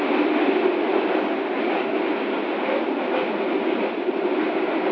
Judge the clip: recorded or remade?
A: recorded